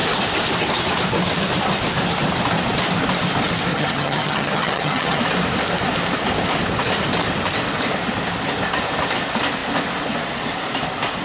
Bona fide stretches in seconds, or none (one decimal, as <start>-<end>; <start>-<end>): 0.0-3.7; 5.2-11.2